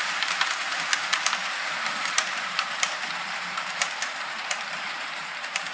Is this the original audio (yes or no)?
no